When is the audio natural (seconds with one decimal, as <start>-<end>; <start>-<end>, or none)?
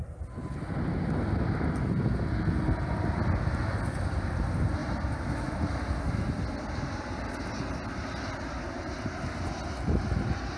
0.0-10.6